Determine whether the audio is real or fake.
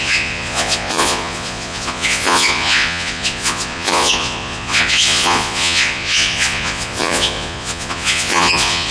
fake